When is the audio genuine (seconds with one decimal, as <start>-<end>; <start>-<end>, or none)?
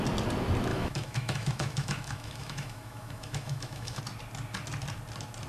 0.0-0.7; 4.0-5.5